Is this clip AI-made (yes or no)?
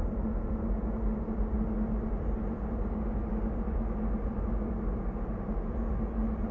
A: no